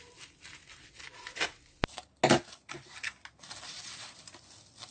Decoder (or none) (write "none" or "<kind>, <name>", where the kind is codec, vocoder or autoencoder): none